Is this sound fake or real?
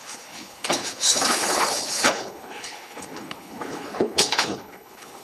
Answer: fake